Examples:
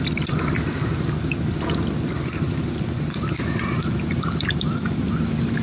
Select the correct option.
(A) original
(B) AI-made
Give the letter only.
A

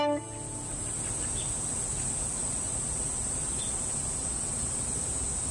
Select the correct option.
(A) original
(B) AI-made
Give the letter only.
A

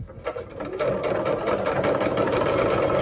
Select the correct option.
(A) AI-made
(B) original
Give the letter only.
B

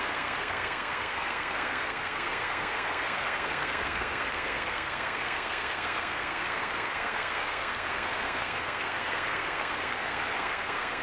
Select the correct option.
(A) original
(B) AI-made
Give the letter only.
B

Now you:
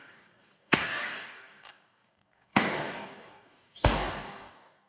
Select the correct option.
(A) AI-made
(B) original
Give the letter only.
A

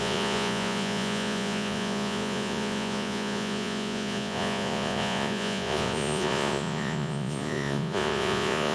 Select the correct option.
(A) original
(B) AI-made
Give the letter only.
B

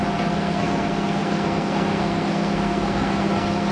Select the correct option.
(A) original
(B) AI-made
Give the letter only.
B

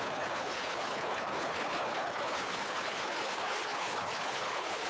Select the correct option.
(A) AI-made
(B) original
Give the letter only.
A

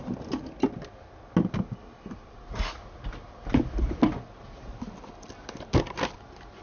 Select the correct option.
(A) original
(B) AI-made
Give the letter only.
A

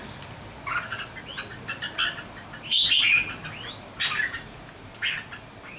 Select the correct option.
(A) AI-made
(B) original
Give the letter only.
B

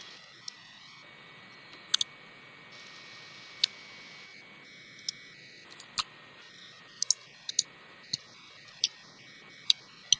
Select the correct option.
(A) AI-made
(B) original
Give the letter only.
B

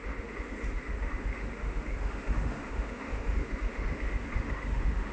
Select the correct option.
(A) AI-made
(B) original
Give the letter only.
A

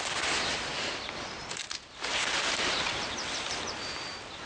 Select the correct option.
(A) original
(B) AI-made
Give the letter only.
A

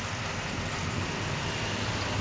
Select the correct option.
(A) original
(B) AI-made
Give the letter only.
A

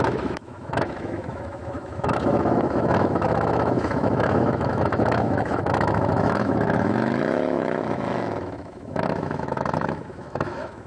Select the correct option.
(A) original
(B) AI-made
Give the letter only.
B